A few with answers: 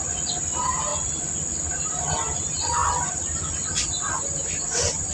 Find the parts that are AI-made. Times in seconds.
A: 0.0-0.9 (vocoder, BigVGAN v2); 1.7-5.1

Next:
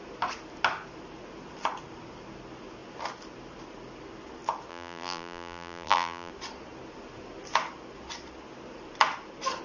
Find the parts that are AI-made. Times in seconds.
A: 4.7-6.3 (vocoder, BigVGAN v2)

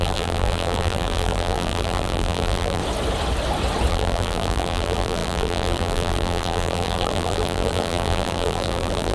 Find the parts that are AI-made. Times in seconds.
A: 0.0-2.8 (vocoder, BigVGAN v2); 3.9-9.1

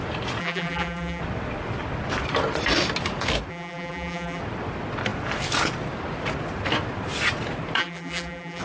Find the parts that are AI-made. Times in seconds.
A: 0.4-1.2 (vocoder, BigVGAN v2); 3.5-4.4; 7.8-8.6

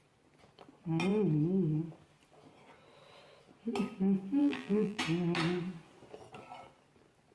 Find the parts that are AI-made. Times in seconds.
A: 4.4-5.0 (vocoder, BigVGAN v2)